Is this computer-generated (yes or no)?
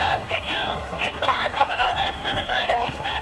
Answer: yes